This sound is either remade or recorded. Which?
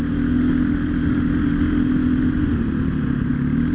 recorded